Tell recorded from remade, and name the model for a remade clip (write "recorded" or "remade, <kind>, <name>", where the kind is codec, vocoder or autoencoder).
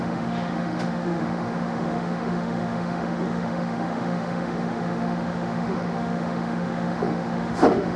remade, autoencoder, DAC-VAE